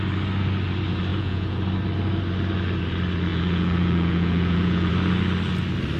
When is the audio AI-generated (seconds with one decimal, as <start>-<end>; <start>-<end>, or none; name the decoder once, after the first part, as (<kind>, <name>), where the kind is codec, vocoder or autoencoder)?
1.1-1.6 (vocoder, Vocos); 3.3-4.9